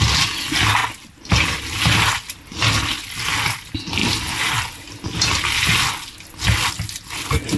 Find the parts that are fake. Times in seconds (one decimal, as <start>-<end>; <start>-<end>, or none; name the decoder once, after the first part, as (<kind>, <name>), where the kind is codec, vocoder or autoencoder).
none